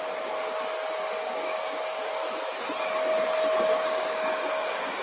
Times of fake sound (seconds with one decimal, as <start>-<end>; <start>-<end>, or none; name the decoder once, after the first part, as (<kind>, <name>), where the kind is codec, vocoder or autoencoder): 1.0-2.2 (codec, DAC); 3.7-5.0